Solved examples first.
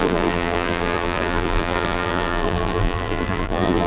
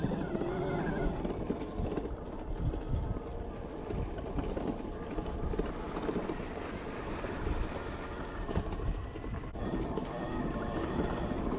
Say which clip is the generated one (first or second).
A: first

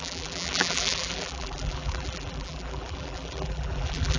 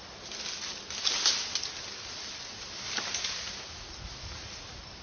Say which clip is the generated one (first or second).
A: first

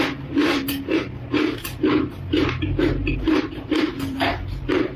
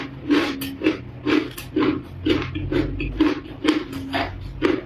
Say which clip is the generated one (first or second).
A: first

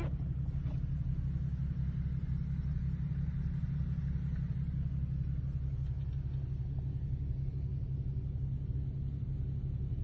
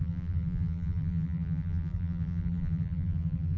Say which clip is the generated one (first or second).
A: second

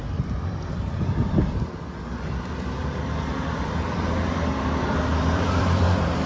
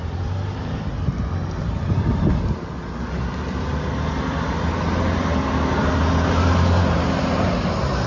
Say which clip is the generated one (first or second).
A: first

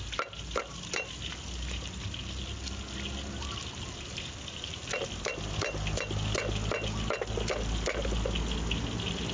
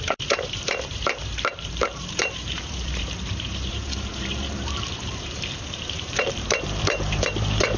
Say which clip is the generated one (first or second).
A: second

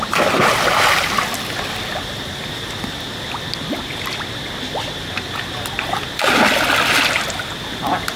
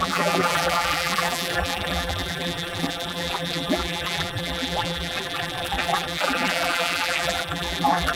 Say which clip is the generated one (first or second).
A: second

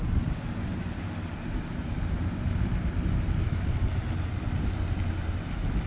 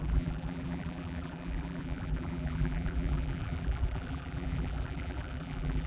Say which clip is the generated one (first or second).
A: second